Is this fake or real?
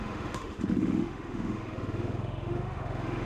fake